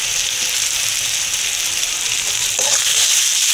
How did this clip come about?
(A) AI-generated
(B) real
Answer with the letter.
B